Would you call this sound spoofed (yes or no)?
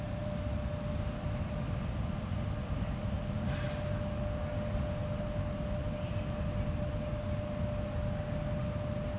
no